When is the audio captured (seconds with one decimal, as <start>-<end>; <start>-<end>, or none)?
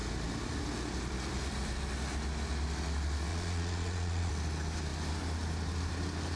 0.0-3.3; 4.3-6.4